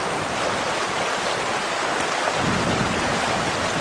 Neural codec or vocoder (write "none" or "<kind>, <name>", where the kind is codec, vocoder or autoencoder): none